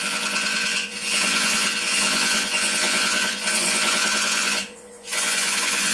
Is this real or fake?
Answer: fake